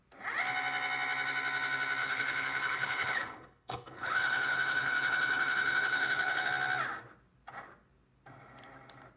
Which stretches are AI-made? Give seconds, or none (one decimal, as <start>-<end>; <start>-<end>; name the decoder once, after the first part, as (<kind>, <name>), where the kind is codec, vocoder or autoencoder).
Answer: 2.0-6.5 (codec, HILCodec)